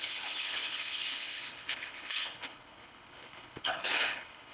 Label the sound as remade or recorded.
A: remade